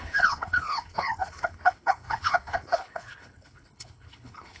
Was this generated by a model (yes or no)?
yes